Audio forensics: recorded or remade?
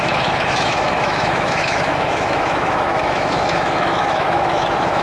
remade